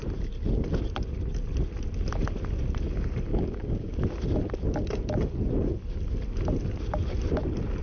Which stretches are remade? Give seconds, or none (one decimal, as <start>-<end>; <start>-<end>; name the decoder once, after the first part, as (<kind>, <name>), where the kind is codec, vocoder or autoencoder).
3.3-4.0 (codec, DAC)